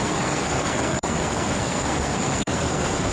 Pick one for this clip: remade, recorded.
remade